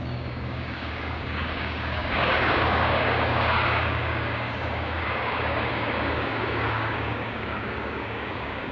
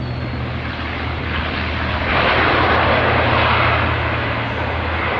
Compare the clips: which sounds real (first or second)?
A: second